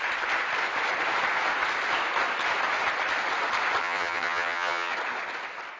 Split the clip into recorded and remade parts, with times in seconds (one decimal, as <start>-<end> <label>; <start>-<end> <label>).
0.0-3.8 recorded; 3.8-4.9 remade; 4.9-5.8 recorded